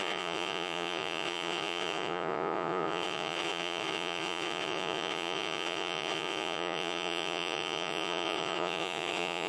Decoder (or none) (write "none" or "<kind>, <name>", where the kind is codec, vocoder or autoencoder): vocoder, Vocos